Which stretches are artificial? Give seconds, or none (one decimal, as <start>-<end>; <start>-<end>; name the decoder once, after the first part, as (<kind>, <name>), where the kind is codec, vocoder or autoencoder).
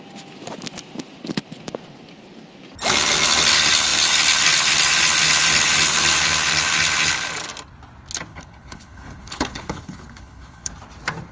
8.3-10.7 (codec, HILCodec)